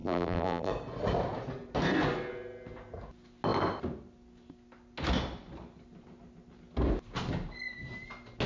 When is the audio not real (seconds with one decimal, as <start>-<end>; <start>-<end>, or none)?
0.0-0.7